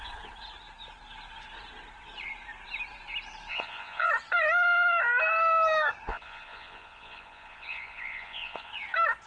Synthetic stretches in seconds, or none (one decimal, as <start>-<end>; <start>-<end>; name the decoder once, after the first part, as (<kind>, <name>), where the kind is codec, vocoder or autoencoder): 3.5-4.1 (vocoder, Vocos); 6.1-8.7